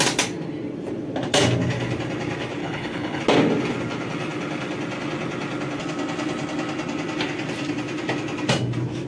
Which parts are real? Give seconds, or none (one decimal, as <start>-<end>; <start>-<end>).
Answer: 0.0-2.6; 3.2-9.1

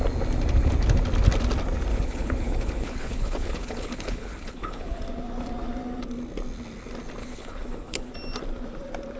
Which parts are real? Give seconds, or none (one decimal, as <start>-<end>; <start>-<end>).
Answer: 0.0-1.9; 5.0-7.2; 8.1-9.2